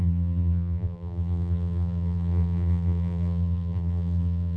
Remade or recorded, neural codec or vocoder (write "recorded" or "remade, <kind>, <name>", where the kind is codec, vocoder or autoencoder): remade, vocoder, BigVGAN v2